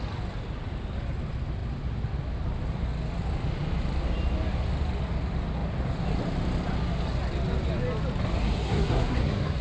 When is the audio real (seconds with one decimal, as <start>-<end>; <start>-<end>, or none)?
0.0-8.4